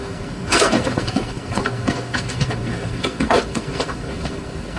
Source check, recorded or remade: remade